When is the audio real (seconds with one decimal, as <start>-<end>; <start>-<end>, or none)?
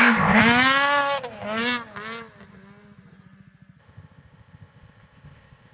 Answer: 0.4-3.8